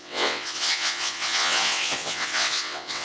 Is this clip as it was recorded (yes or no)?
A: no